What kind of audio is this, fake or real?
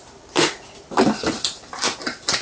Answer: real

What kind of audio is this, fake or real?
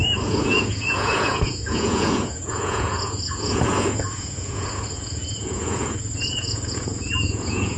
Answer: fake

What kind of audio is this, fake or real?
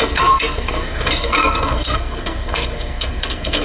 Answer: fake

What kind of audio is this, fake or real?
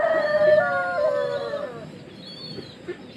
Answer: real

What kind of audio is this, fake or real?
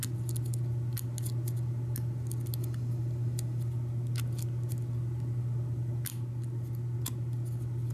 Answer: real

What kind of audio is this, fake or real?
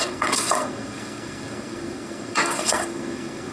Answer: fake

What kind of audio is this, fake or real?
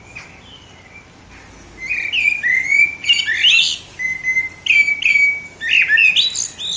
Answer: real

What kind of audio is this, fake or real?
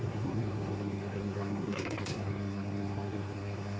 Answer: fake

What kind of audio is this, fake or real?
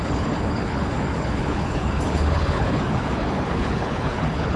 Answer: fake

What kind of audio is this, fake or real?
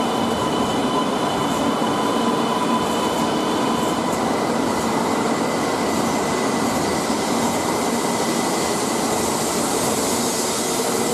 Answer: real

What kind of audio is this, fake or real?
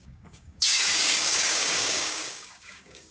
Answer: fake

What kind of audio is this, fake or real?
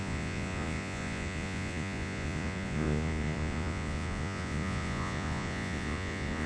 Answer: fake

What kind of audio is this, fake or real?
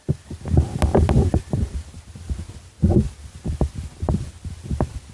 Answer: real